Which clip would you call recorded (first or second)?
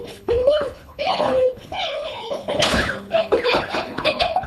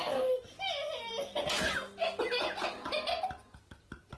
second